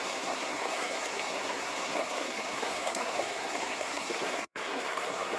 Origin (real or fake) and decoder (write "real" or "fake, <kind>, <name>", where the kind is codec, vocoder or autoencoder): fake, codec, SNAC